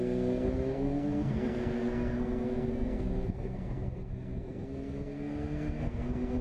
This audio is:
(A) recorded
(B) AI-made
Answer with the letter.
B